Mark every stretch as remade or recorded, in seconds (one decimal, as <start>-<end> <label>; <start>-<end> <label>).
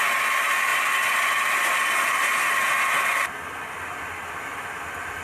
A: 0.0-5.2 recorded